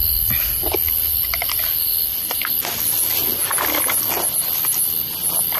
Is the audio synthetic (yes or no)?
no